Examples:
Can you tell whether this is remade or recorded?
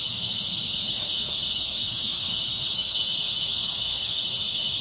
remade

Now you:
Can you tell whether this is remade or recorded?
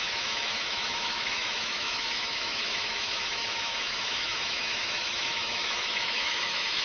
remade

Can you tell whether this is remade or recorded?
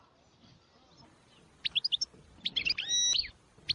recorded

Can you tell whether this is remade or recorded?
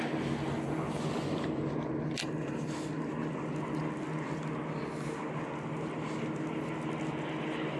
recorded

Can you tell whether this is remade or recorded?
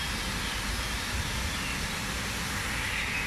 recorded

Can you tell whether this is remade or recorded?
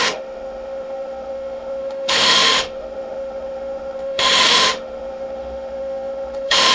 remade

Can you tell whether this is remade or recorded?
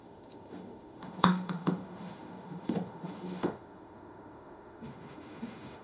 remade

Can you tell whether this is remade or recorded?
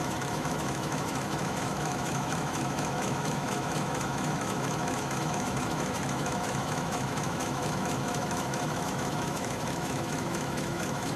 remade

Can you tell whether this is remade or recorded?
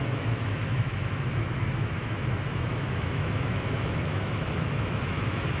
remade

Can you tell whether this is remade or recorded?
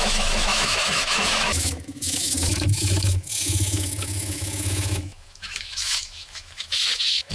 remade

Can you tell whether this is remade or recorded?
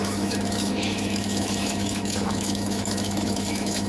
remade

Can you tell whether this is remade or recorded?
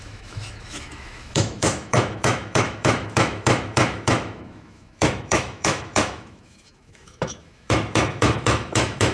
remade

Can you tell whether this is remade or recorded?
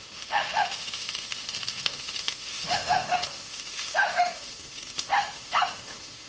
remade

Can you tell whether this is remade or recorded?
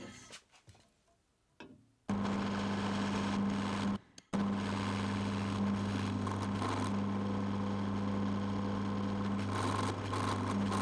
recorded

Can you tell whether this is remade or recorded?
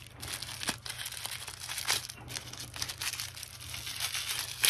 recorded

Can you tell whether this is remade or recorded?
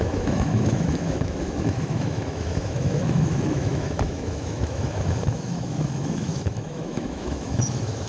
remade